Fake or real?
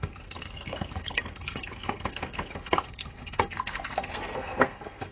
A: fake